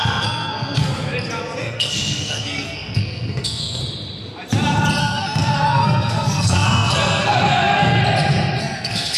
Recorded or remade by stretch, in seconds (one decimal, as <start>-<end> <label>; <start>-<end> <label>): 0.0-0.9 remade; 0.9-1.6 recorded; 1.6-3.8 remade; 3.8-5.0 recorded; 5.0-8.0 remade; 8.0-8.6 recorded; 8.6-9.2 remade